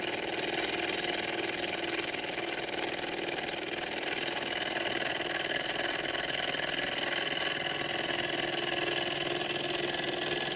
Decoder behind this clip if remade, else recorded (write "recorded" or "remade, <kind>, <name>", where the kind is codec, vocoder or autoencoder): recorded